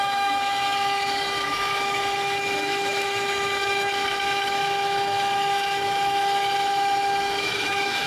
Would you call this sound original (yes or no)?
no